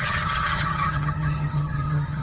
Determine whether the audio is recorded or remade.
remade